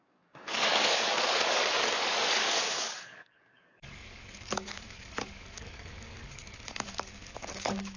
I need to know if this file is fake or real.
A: fake